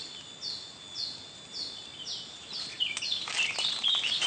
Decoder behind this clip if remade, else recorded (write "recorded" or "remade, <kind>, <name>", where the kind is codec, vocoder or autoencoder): recorded